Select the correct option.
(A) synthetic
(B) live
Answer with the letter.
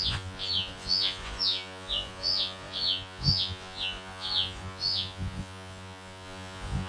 A